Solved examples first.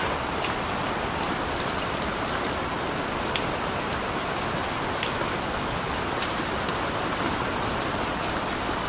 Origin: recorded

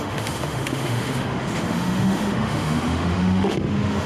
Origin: remade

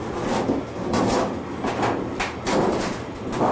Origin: recorded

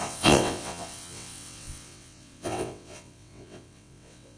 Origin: remade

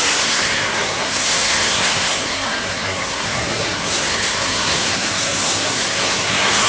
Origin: remade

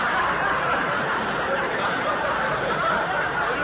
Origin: remade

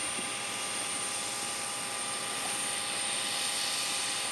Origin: recorded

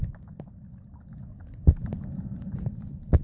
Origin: recorded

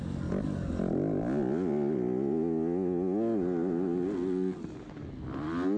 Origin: recorded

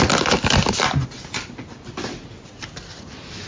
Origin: recorded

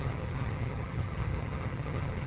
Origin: remade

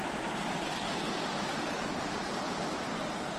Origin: recorded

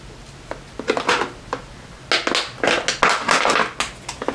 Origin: recorded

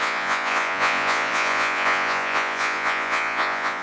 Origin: remade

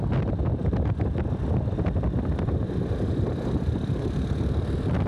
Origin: recorded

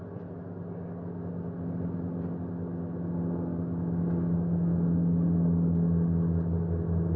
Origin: recorded